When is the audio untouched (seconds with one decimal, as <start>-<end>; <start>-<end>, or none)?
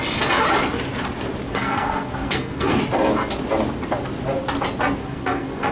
0.0-1.5; 2.8-5.0